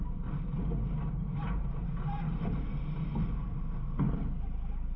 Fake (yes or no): no